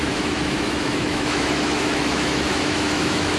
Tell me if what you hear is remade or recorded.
remade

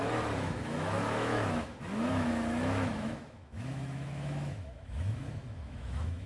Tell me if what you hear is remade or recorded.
remade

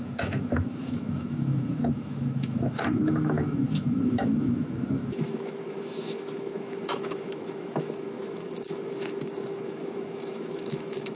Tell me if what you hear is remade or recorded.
remade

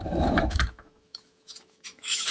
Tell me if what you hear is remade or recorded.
remade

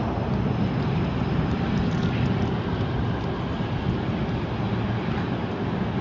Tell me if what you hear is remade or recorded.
recorded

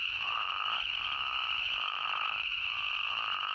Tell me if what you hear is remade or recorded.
remade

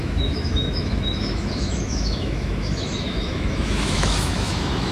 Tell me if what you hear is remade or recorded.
remade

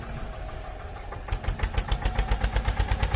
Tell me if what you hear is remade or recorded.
recorded